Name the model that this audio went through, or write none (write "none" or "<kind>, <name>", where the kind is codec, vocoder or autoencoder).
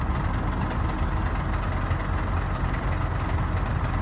none